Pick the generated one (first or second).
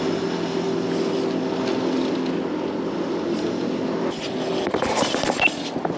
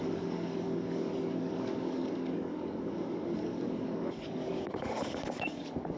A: second